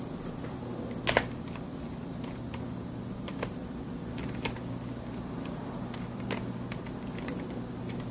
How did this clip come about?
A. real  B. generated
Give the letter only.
A